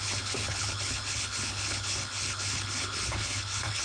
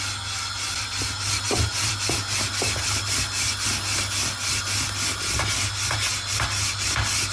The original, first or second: second